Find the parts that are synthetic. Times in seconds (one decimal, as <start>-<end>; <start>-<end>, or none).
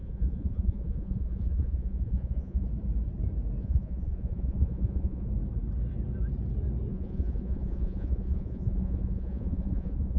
0.0-2.7; 3.6-5.3; 6.9-10.2